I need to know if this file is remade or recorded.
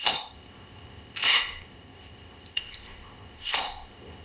remade